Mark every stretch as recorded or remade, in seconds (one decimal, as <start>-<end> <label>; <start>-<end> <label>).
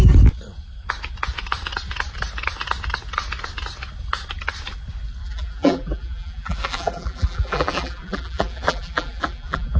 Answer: 0.0-5.2 recorded; 5.2-9.8 remade